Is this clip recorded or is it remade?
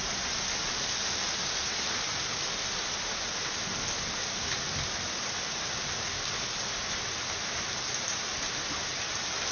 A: recorded